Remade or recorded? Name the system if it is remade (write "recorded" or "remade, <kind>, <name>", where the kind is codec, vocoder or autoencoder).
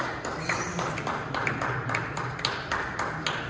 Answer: recorded